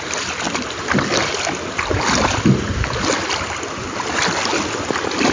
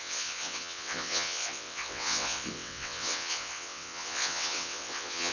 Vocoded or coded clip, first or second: second